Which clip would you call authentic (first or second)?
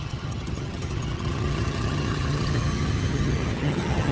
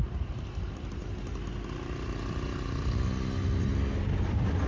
second